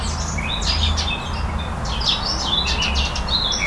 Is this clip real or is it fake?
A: real